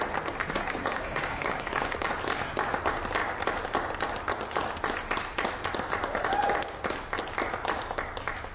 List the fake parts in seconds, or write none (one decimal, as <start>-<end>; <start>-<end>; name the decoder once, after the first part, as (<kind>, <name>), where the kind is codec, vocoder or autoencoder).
0.6-2.1 (codec, DAC)